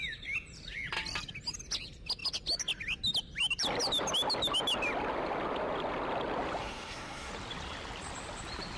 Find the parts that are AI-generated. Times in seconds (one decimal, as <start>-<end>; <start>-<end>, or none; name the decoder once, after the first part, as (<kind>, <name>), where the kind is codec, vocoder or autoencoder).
6.6-7.3 (codec, SNAC)